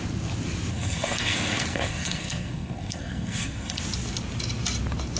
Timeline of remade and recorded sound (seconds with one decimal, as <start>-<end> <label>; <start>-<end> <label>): 0.0-0.7 recorded; 0.7-3.8 remade; 3.8-5.2 recorded